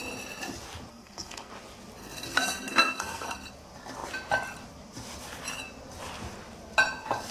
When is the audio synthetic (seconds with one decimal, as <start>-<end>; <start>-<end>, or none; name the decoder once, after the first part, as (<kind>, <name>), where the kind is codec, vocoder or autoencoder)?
0.9-1.5 (codec, SNAC); 2.0-3.5